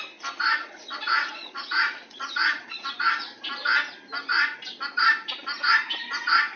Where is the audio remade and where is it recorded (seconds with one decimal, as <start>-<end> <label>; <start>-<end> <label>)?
0.0-0.5 recorded; 0.5-2.9 remade; 2.9-6.6 recorded